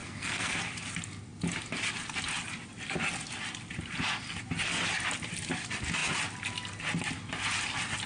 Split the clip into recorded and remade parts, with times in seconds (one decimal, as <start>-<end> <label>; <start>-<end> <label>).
0.0-0.6 remade; 0.6-8.1 recorded